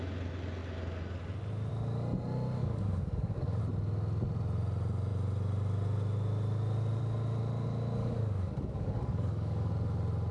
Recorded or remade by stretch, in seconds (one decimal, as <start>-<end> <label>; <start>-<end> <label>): 0.0-2.6 recorded; 2.6-3.6 remade; 3.6-8.0 recorded; 8.0-9.7 remade; 9.7-10.3 recorded

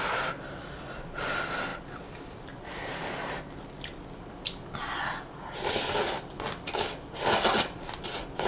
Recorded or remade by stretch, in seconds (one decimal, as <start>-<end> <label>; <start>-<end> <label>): 0.0-1.7 recorded; 1.7-2.9 remade; 2.9-8.5 recorded

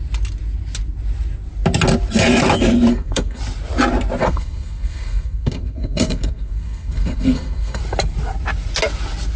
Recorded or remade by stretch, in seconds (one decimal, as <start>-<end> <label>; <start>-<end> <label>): 0.0-2.9 recorded; 2.9-3.4 remade; 3.4-4.2 recorded; 4.2-7.8 remade; 7.8-9.4 recorded

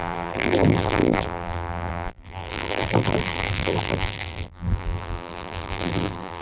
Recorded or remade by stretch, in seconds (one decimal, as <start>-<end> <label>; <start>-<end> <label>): 0.0-6.4 remade

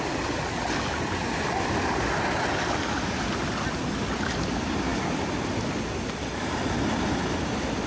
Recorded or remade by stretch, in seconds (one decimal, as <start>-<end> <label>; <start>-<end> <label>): 0.0-7.9 recorded

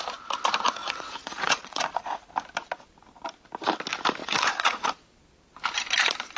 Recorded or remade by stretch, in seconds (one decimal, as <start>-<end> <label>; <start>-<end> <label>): 0.0-0.8 recorded; 0.8-2.3 remade; 2.3-4.2 recorded; 4.2-4.8 remade; 4.8-6.4 recorded

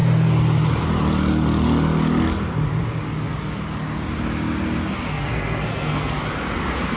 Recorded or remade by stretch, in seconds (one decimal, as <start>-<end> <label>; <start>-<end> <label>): 0.0-5.1 recorded; 5.1-6.1 remade; 6.1-7.0 recorded